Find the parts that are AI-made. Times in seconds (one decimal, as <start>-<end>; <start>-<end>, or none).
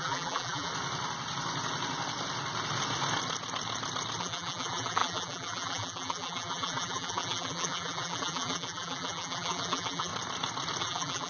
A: 0.0-0.7; 4.2-10.1; 10.8-11.3